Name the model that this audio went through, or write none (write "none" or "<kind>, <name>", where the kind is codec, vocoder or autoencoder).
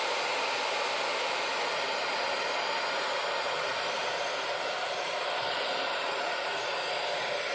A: none